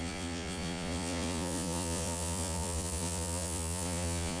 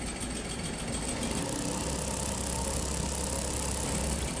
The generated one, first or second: first